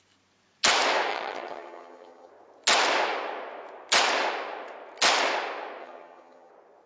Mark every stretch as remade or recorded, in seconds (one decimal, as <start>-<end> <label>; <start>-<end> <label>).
0.0-1.1 recorded; 1.1-2.3 remade; 2.3-5.8 recorded; 5.8-6.5 remade; 6.5-6.9 recorded